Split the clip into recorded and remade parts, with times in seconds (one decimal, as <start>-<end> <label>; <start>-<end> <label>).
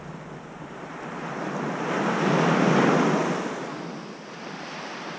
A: 0.0-5.2 recorded